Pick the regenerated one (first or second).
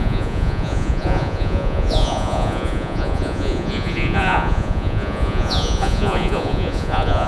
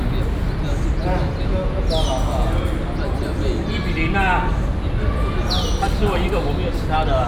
first